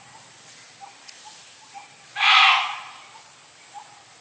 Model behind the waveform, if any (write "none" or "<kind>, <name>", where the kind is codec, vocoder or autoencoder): none